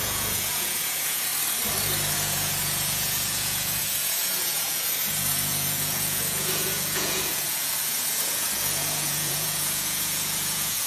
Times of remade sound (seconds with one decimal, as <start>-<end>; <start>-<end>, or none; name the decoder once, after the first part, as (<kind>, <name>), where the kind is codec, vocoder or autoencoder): 0.0-1.3 (vocoder, Vocos); 2.1-10.9